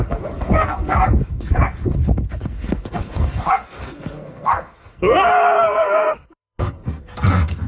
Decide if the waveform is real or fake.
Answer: fake